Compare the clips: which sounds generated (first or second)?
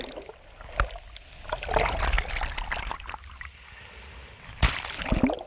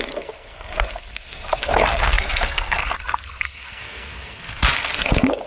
second